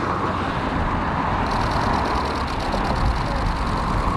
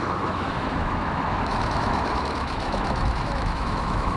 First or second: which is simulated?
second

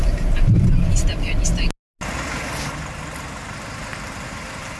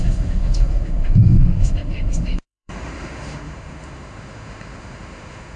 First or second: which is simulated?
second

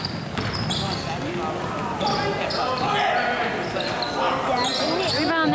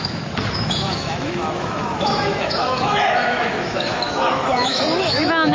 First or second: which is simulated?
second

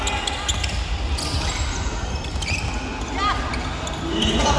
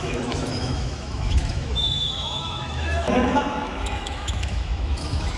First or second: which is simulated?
second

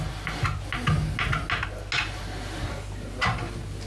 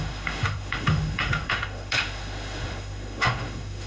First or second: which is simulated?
second